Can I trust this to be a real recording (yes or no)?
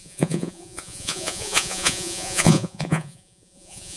no